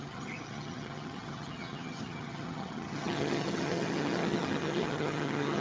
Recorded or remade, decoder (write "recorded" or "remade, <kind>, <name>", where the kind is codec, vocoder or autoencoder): remade, vocoder, HiFi-GAN